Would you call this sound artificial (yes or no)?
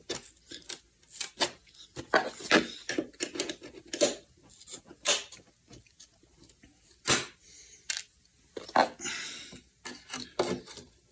no